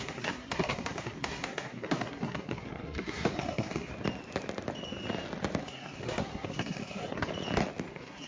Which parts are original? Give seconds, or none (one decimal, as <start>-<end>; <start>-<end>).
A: 3.9-5.6; 7.3-7.9